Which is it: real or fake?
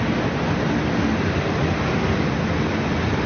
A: real